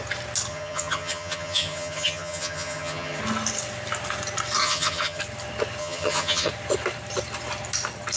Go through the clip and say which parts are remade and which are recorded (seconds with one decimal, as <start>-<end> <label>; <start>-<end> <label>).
0.0-0.5 recorded; 0.5-3.2 remade; 3.2-4.6 recorded; 4.6-5.2 remade; 5.2-5.8 recorded; 5.8-6.5 remade; 6.5-8.2 recorded